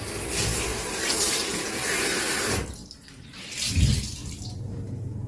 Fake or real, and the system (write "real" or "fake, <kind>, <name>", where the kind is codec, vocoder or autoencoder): real